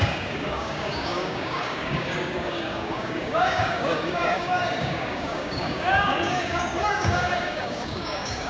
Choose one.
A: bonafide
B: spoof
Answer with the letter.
B